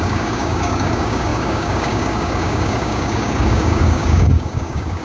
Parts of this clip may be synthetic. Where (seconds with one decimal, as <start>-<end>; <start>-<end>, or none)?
0.0-5.0